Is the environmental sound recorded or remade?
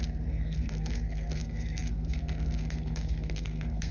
remade